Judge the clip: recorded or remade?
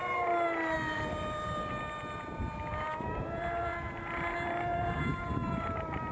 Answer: remade